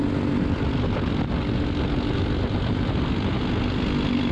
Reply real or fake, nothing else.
real